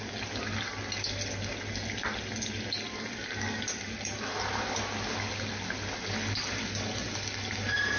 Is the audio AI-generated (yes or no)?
no